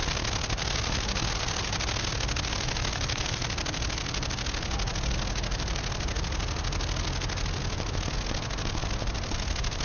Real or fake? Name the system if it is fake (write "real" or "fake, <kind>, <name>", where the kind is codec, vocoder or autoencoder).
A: real